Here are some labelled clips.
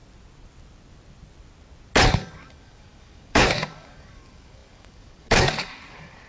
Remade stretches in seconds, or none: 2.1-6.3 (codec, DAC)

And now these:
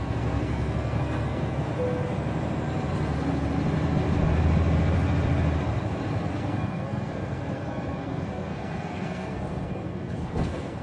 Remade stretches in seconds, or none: 0.0-1.7 (codec, SNAC); 6.2-10.8